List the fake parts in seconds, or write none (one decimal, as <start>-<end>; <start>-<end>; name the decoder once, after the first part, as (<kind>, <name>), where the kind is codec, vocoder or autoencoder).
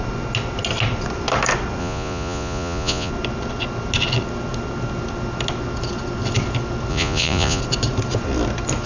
1.8-3.1 (vocoder, Vocos); 6.9-7.6